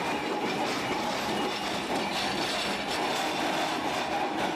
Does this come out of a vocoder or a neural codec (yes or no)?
no